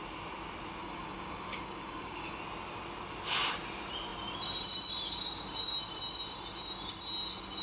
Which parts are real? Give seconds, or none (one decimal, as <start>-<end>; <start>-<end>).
0.0-0.8; 2.4-7.6

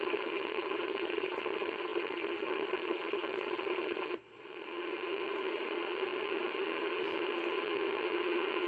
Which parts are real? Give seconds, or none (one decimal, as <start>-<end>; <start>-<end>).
none

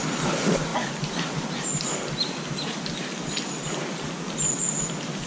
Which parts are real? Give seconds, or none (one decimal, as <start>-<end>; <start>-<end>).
0.0-5.3

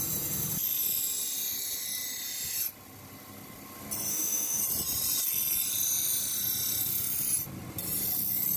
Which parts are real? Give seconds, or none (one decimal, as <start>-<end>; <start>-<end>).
0.0-4.1; 4.6-8.6

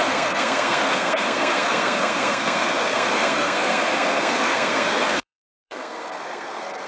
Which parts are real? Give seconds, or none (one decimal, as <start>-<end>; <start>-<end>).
none

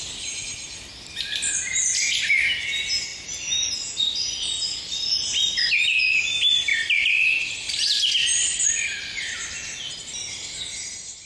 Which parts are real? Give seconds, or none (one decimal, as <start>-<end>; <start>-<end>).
0.0-6.7; 9.9-11.3

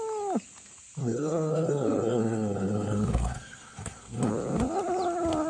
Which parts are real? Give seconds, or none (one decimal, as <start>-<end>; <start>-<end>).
0.0-1.0; 4.3-5.5